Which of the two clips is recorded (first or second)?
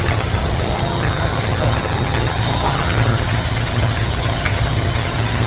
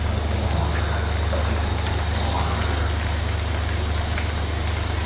second